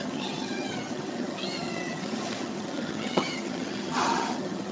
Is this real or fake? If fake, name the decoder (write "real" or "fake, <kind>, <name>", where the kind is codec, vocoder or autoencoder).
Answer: fake, vocoder, HiFi-GAN